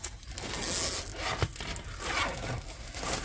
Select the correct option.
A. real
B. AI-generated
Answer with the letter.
A